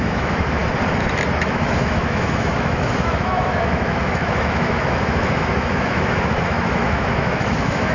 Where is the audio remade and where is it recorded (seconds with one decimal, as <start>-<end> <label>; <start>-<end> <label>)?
0.0-0.6 remade; 0.6-1.4 recorded; 1.4-7.9 remade